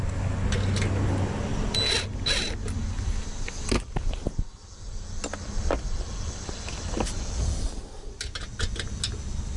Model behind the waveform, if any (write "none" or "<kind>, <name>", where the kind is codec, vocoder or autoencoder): none